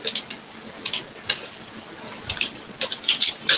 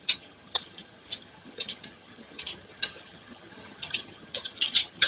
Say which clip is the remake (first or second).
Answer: second